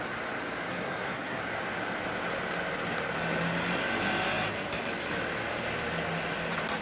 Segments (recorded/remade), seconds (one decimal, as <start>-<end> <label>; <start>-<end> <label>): 0.0-0.7 recorded; 0.7-1.4 remade; 1.4-6.8 recorded